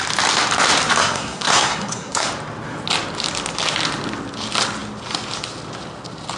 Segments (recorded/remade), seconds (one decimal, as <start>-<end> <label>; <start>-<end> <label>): 0.0-1.0 recorded; 1.0-2.3 remade; 2.3-6.4 recorded